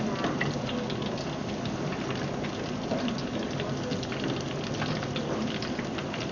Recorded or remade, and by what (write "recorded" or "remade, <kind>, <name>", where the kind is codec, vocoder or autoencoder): recorded